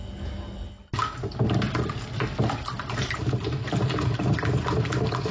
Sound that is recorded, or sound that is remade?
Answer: recorded